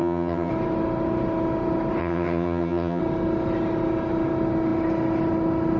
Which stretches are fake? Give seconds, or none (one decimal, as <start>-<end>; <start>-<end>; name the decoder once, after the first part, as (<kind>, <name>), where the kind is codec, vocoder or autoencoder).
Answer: 0.0-0.5 (vocoder, HiFi-GAN); 2.0-3.0